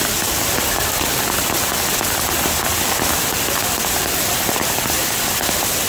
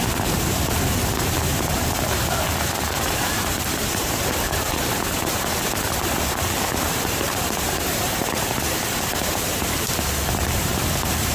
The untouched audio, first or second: first